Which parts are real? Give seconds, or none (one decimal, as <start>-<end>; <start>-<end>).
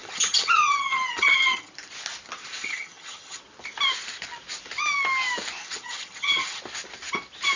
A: 1.7-2.6; 3.4-5.6; 6.6-7.6